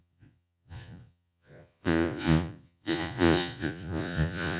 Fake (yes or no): yes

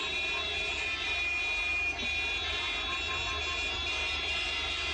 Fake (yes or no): no